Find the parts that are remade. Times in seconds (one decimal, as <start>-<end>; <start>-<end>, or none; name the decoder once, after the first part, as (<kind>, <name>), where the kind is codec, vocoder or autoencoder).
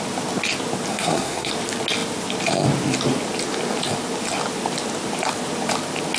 0.9-1.5 (codec, SNAC)